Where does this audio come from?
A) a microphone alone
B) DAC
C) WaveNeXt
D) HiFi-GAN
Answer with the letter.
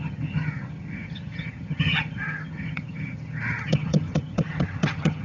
D